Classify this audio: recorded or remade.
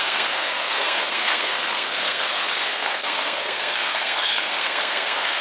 remade